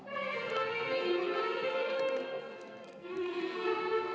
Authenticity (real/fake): fake